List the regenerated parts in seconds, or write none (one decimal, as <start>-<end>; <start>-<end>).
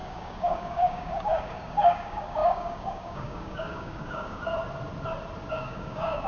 0.0-4.5; 5.5-6.3